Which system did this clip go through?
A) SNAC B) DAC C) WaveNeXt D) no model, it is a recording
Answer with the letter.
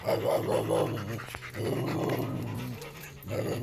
D